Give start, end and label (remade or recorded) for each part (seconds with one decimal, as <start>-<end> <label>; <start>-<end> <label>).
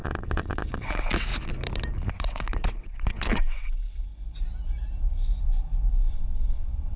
0.0-1.3 remade; 1.3-2.1 recorded; 2.1-4.1 remade; 4.1-6.1 recorded; 6.1-7.0 remade